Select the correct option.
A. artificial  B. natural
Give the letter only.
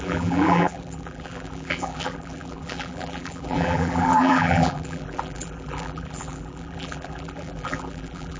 A